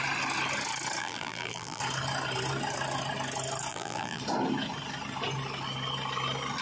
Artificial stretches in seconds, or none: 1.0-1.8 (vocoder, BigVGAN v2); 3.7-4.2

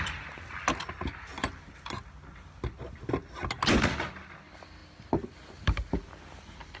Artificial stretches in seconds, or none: none

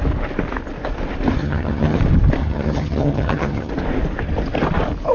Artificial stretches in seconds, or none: 1.4-2.0 (vocoder, HiFi-GAN); 2.4-3.7

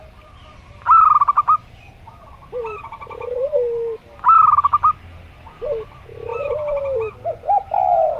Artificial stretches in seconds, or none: 6.3-6.8 (vocoder, BigVGAN v2)